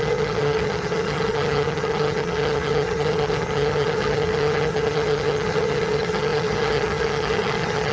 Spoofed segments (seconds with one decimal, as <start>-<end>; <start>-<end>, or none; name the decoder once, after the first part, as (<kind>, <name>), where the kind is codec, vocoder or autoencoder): 0.0-7.9 (vocoder, HiFi-GAN)